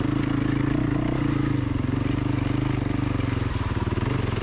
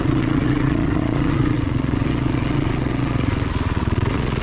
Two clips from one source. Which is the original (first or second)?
first